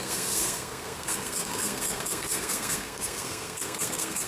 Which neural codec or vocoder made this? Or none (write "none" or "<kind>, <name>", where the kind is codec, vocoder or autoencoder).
codec, SNAC